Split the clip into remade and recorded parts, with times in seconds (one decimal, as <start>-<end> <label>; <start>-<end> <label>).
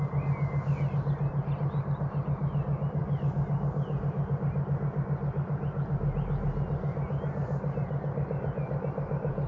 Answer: 0.0-9.5 recorded